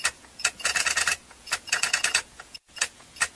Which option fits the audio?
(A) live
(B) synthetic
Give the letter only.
B